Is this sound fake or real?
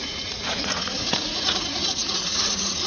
fake